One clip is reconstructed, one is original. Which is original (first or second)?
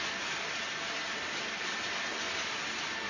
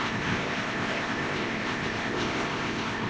first